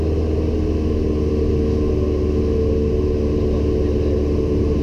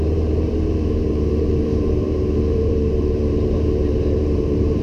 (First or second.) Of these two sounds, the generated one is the second